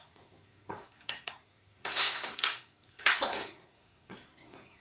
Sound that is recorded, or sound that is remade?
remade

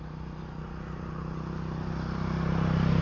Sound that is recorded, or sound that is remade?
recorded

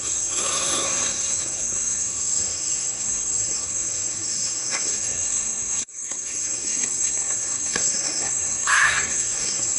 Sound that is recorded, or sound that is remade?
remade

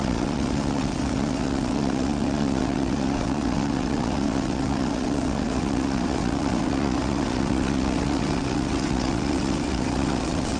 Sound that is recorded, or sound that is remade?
remade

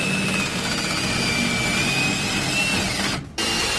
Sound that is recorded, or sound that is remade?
recorded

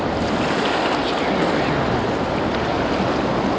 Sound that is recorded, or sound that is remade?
recorded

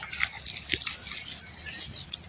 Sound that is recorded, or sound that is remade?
recorded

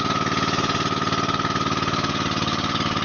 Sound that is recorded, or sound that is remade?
recorded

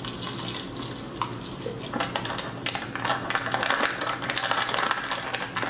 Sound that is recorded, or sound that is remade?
recorded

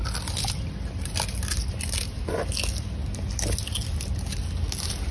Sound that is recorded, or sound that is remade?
recorded